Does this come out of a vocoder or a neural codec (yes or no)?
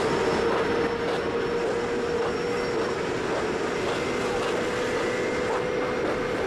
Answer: no